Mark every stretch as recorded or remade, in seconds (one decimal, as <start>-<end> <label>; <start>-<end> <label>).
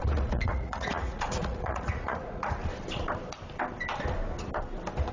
0.0-2.6 remade; 2.6-5.1 recorded